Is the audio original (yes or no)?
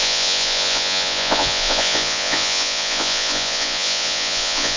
no